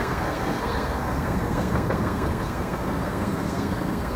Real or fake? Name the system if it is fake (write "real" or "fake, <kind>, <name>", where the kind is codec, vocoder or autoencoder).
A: fake, codec, SNAC